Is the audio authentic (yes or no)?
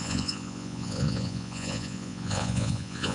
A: no